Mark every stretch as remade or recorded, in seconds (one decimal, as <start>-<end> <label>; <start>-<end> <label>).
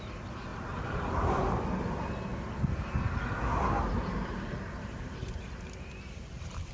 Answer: 0.0-0.5 recorded; 0.5-1.4 remade; 1.4-3.9 recorded; 3.9-6.7 remade